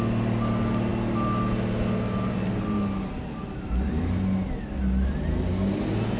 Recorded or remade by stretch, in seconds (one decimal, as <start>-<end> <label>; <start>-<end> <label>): 0.0-6.2 recorded